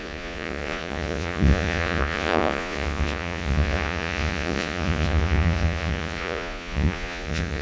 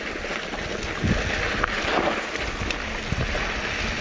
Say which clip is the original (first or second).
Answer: second